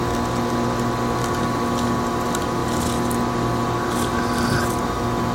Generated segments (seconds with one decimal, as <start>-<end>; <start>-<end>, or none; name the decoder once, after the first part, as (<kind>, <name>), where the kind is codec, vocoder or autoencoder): none